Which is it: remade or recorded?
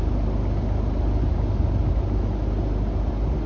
recorded